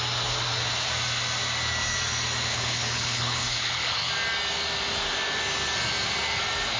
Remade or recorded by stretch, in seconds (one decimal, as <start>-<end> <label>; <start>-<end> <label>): 0.0-2.5 recorded; 2.5-4.1 remade; 4.1-6.8 recorded